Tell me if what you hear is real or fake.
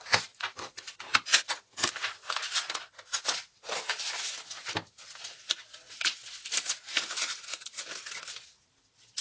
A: real